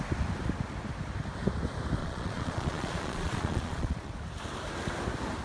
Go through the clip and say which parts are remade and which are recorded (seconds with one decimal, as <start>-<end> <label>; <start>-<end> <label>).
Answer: 0.0-2.0 recorded; 2.0-4.1 remade; 4.1-5.4 recorded